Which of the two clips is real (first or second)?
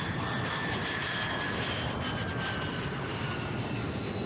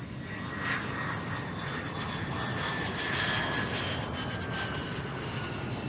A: second